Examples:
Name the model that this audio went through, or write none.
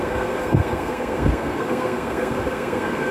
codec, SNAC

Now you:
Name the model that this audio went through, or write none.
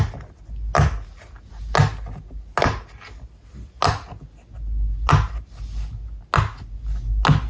none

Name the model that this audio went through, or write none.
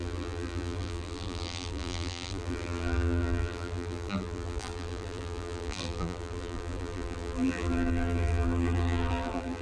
vocoder, BigVGAN v2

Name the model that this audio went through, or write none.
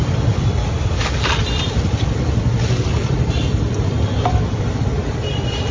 vocoder, BigVGAN v2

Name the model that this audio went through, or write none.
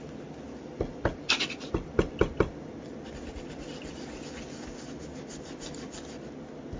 none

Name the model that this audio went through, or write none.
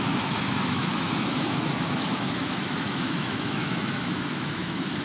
autoencoder, DAC-VAE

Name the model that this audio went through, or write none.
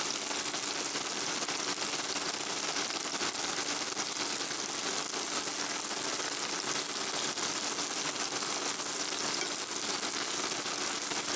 none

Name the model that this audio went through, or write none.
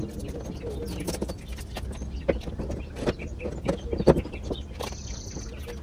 none